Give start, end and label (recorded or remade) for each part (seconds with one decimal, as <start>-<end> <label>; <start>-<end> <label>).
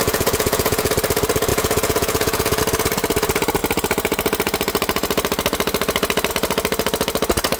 0.0-0.9 remade; 0.9-1.5 recorded; 1.5-2.6 remade; 2.6-7.6 recorded